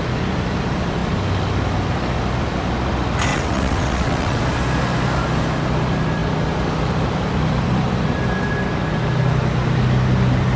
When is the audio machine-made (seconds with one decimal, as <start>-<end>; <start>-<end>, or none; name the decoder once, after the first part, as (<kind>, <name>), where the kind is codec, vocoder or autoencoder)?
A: 3.3-4.4 (vocoder, WaveNeXt)